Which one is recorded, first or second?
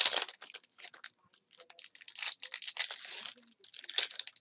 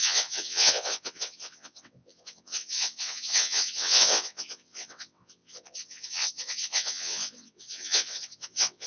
first